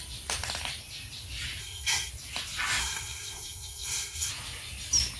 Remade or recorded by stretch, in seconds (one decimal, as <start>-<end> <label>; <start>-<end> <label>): 0.0-1.6 recorded; 1.6-2.1 remade; 2.1-2.8 recorded; 2.8-4.3 remade; 4.3-5.2 recorded